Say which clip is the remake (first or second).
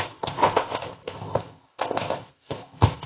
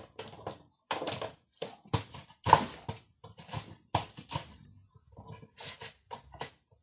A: first